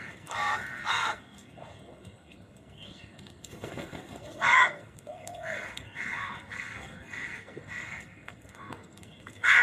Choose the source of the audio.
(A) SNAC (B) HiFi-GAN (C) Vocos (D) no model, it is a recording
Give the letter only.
A